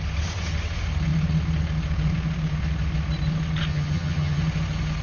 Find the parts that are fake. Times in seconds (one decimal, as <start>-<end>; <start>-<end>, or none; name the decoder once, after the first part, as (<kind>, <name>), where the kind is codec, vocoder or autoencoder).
3.7-4.4 (vocoder, HiFi-GAN)